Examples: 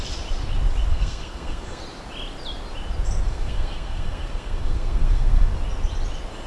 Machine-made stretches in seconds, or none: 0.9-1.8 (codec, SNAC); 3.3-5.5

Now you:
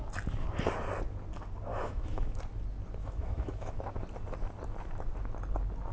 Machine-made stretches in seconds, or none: 1.7-2.4 (autoencoder, DAC-VAE); 3.0-3.8

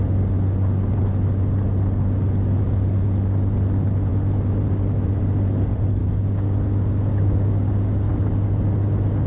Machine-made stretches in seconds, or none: 6.0-8.1 (codec, DAC)

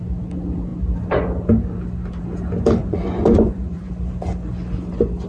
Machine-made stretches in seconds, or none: 2.8-3.9 (vocoder, Vocos)